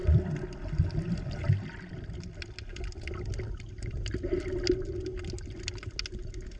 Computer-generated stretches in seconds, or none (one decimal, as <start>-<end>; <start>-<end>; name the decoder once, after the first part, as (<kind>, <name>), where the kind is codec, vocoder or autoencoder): none